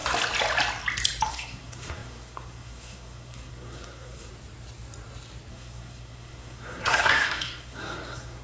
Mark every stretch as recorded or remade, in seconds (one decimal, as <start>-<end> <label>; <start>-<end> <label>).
0.0-1.3 recorded; 1.3-4.3 remade; 4.3-5.5 recorded; 5.5-8.4 remade